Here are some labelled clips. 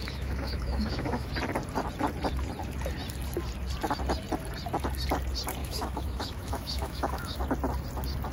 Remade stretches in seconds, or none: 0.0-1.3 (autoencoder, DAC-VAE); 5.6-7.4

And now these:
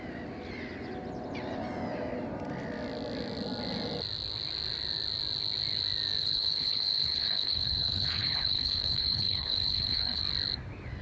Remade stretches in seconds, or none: 6.2-10.2 (codec, HILCodec)

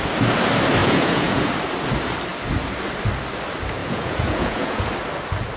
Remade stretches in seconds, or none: 0.8-1.5 (vocoder, Vocos); 3.8-4.9

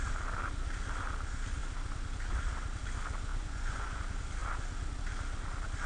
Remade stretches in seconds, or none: 3.3-4.0 (vocoder, Vocos)

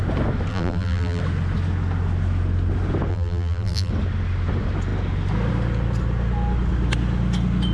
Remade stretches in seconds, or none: 0.5-1.2 (vocoder, BigVGAN v2); 3.1-3.9

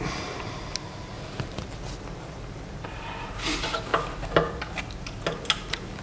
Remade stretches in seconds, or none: none